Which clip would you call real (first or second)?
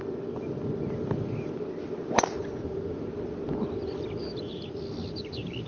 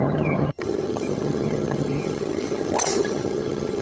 first